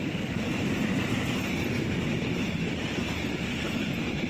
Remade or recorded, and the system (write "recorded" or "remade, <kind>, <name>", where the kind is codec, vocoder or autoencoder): remade, vocoder, BigVGAN v2